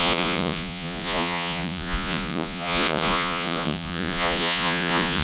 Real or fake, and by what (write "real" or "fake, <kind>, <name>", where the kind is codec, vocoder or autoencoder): fake, vocoder, Vocos